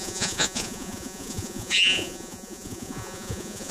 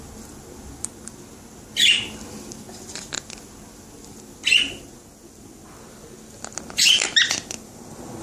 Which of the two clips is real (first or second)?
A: second